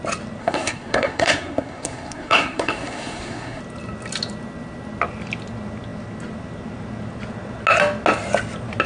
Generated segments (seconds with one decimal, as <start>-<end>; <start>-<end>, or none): 0.4-3.6